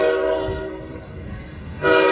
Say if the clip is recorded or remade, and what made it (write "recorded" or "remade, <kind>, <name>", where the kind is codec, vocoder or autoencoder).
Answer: remade, codec, SNAC